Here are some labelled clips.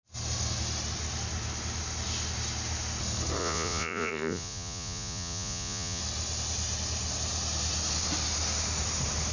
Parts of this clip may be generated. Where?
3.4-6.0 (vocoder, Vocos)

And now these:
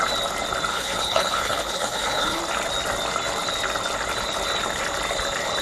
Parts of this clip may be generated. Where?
0.7-2.4 (codec, HILCodec)

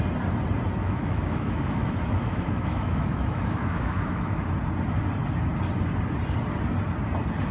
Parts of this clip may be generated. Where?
0.8-4.5 (autoencoder, DAC-VAE)

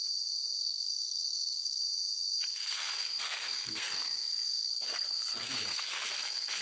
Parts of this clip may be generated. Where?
0.6-1.8 (codec, SNAC); 2.5-6.6

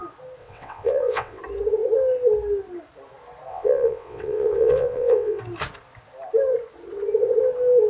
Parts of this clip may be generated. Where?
0.4-1.4 (vocoder, WaveNeXt); 3.5-5.4

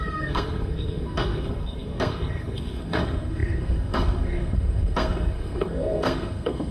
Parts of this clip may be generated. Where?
0.0-6.7 (codec, SNAC)

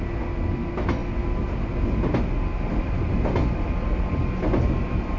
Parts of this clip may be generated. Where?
none